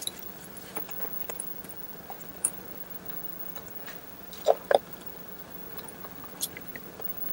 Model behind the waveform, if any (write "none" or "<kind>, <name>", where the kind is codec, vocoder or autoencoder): vocoder, BigVGAN v2